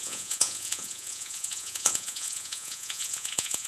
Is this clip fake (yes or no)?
yes